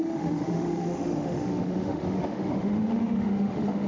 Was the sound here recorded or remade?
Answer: remade